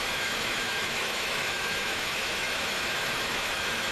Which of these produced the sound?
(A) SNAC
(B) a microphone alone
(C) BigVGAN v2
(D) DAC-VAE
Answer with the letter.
D